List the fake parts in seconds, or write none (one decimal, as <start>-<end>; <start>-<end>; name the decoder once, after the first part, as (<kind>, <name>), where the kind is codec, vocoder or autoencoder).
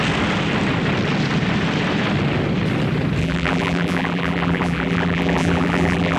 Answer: 3.2-6.2 (vocoder, BigVGAN v2)